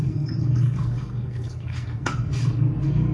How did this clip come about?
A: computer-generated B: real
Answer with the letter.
A